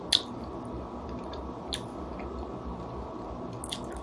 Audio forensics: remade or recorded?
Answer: recorded